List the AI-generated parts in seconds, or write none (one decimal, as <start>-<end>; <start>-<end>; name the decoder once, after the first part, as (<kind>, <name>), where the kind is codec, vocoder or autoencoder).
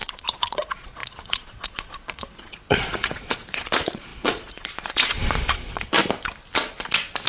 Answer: 0.0-6.0 (vocoder, Vocos)